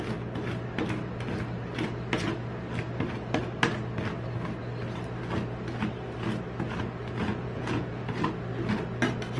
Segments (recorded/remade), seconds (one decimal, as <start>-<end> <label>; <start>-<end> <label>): 0.0-7.3 recorded; 7.3-8.0 remade; 8.0-9.4 recorded